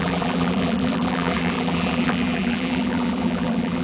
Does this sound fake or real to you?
fake